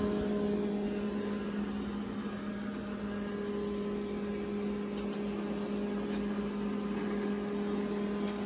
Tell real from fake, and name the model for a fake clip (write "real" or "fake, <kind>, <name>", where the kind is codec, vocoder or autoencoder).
real